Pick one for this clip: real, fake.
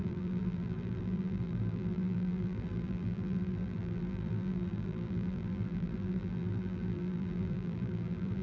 fake